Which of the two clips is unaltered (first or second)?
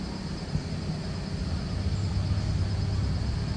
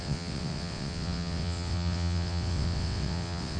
first